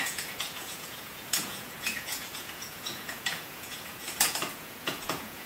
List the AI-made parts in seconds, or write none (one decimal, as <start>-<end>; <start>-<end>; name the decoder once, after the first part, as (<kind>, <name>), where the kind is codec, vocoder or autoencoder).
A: 0.0-5.5 (vocoder, Vocos)

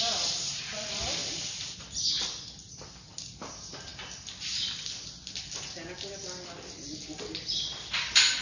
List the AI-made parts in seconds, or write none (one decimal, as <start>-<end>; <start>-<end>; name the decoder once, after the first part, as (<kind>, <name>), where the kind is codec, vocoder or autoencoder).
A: none

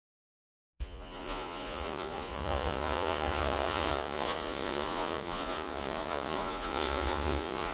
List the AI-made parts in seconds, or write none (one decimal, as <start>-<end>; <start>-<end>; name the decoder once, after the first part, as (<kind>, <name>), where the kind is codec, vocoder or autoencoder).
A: 0.0-7.7 (vocoder, Vocos)

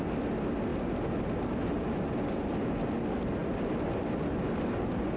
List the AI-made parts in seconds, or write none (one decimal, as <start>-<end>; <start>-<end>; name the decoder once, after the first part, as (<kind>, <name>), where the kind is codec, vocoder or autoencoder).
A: none

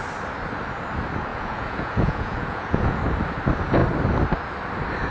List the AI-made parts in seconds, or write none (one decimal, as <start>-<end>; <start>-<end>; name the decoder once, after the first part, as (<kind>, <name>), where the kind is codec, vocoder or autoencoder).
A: 1.3-3.0 (vocoder, Vocos)

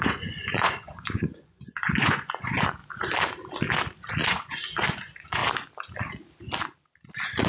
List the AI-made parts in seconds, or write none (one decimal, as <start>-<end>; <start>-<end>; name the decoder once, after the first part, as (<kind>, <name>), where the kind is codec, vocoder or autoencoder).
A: 0.0-2.8 (vocoder, Vocos); 4.1-5.4

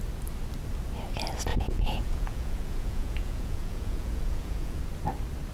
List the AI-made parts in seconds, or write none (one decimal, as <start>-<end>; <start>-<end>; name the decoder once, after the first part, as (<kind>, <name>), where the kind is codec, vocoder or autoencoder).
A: 1.5-4.8 (vocoder, Vocos)

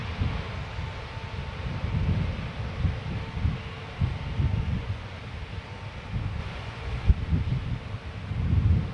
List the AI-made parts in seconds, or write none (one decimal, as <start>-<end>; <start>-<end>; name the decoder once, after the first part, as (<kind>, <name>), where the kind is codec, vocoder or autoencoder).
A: 4.5-5.2 (vocoder, Vocos); 6.4-7.1